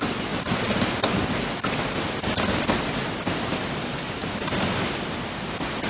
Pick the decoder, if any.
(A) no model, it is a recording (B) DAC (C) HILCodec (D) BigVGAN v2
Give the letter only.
A